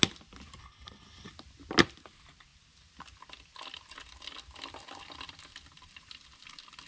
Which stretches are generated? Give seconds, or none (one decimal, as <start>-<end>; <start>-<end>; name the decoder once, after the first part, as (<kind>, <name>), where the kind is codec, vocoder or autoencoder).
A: 0.6-1.3 (codec, HILCodec)